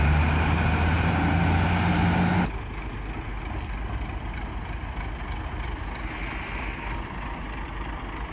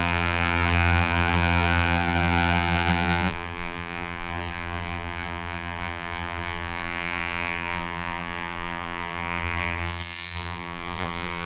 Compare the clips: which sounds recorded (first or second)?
first